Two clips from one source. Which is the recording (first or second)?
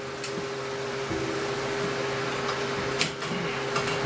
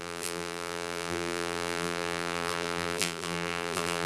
first